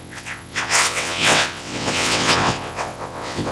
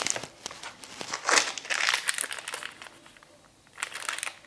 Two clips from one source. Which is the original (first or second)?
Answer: second